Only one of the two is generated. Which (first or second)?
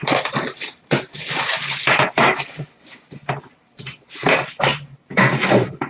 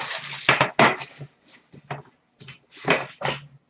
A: first